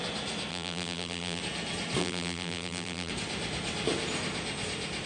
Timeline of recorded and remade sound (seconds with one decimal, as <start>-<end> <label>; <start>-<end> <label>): 0.0-0.5 recorded; 0.5-1.4 remade; 1.4-2.0 recorded; 2.0-3.1 remade; 3.1-5.1 recorded